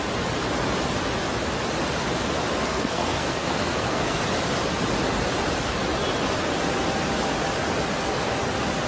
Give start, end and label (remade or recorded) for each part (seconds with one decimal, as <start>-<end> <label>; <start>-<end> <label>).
0.0-2.7 recorded; 2.7-4.2 remade; 4.2-8.9 recorded